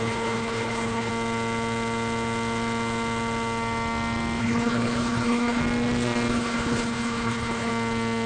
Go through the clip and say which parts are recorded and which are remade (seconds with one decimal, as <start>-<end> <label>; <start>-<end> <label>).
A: 0.0-1.1 remade; 1.1-4.4 recorded; 4.4-5.6 remade; 5.6-6.3 recorded; 6.3-7.7 remade; 7.7-8.3 recorded